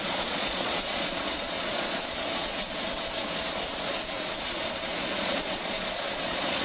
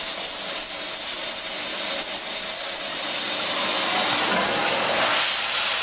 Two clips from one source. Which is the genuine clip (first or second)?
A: second